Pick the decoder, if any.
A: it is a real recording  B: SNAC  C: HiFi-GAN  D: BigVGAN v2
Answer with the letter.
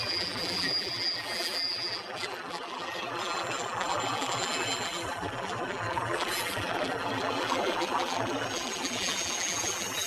D